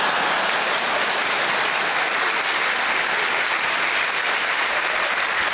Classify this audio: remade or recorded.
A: recorded